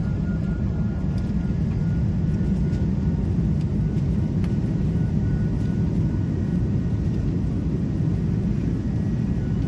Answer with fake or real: fake